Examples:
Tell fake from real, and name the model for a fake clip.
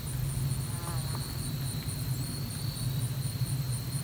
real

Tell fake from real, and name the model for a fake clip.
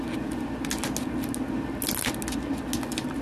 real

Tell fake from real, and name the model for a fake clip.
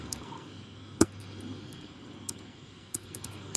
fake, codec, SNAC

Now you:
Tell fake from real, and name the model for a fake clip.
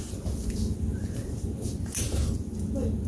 real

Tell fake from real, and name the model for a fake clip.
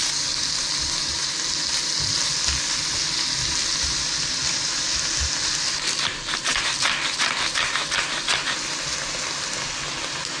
real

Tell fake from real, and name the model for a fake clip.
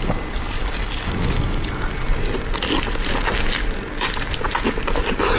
real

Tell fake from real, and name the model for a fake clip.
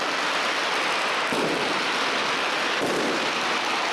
real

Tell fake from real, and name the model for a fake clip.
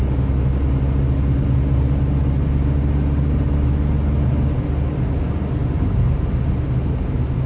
real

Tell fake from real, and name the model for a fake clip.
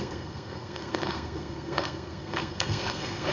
fake, codec, SNAC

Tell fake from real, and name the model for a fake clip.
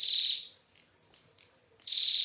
real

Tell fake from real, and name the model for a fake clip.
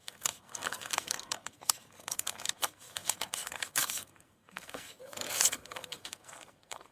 fake, codec, SNAC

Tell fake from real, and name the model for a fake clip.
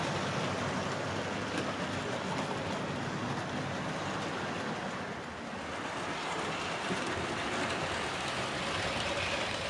real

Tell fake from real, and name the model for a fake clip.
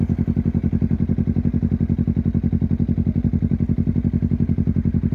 real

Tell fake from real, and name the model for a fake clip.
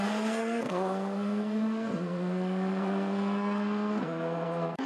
fake, codec, SNAC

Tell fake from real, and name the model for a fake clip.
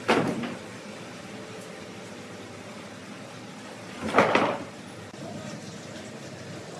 real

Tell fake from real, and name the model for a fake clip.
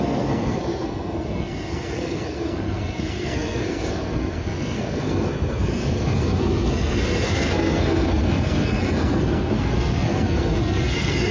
fake, codec, SNAC